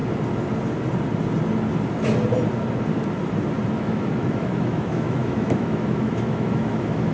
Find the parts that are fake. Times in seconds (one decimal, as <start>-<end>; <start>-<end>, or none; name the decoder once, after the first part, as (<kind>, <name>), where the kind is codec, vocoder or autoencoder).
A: 3.8-7.1 (autoencoder, DAC-VAE)